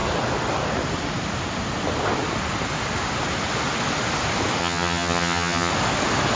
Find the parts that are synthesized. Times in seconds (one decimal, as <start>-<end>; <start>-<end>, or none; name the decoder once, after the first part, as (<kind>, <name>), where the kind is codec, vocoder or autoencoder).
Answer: 4.6-5.7 (vocoder, HiFi-GAN)